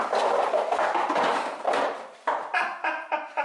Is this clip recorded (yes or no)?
yes